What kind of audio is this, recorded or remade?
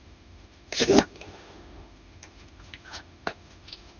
remade